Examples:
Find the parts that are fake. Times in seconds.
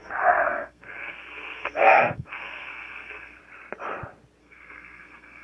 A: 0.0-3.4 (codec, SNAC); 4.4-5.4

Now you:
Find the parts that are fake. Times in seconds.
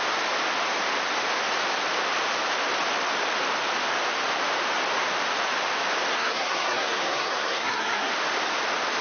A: 6.1-8.1 (codec, SNAC)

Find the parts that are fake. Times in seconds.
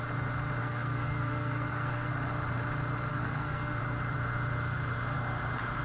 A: 0.6-2.1 (codec, SNAC); 3.1-3.8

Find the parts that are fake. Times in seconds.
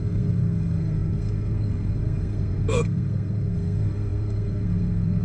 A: 0.0-5.2 (codec, SNAC)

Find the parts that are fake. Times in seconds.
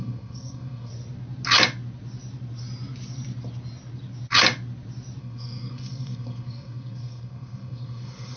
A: 0.0-0.9 (codec, SNAC); 5.2-8.4